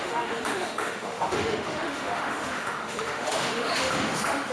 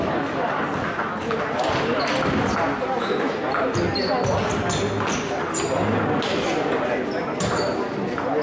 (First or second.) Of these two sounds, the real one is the second